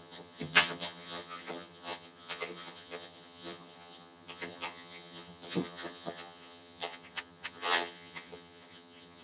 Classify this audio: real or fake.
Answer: fake